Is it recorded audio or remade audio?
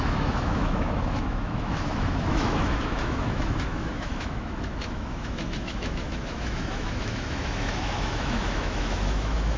remade